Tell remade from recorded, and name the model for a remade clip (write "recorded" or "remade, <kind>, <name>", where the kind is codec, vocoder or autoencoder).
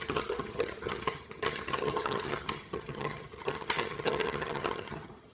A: remade, vocoder, HiFi-GAN